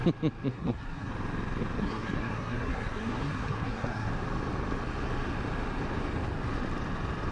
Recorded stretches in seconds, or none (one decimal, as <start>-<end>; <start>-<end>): 0.0-0.5; 1.1-1.8; 4.1-7.3